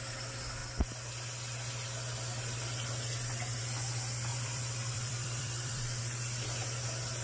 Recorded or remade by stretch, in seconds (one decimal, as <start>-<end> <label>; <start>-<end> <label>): 0.0-4.3 recorded; 4.3-6.0 remade; 6.0-7.2 recorded